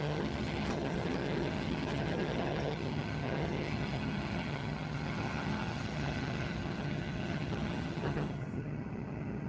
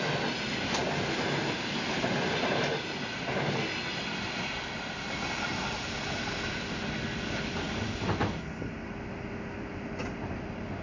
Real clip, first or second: second